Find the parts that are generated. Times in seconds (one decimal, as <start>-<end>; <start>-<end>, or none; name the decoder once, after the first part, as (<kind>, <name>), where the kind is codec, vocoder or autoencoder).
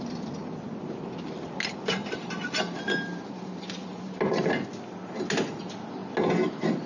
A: 2.0-4.5 (vocoder, BigVGAN v2)